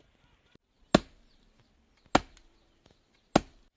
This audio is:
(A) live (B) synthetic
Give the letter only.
A